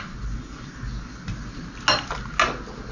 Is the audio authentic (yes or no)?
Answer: yes